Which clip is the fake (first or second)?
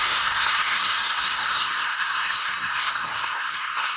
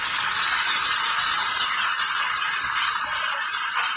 first